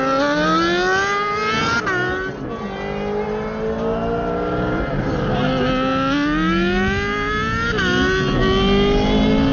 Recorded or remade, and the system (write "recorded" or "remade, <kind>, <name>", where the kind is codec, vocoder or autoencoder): recorded